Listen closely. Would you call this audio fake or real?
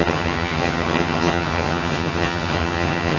fake